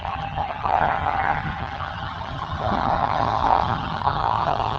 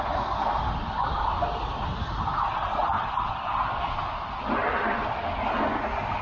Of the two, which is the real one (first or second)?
second